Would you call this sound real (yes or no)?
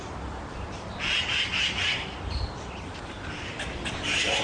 yes